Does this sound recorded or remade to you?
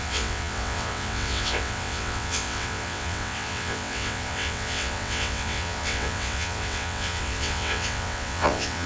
remade